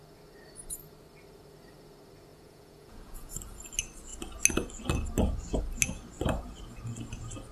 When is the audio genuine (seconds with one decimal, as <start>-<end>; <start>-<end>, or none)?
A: 0.0-2.3; 3.3-7.5